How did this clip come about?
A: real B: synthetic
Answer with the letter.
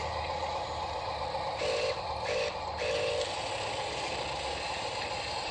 A